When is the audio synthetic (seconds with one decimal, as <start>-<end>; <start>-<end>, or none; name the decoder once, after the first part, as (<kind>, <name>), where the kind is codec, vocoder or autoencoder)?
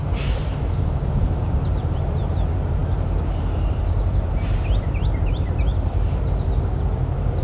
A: 0.0-2.8 (vocoder, BigVGAN v2); 3.7-5.7